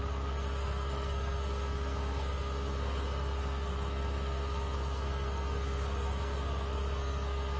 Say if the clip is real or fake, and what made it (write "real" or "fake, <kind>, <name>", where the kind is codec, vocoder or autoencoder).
fake, codec, SNAC